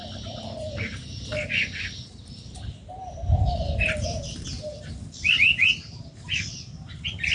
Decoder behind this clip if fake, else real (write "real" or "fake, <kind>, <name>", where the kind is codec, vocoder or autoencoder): fake, vocoder, BigVGAN v2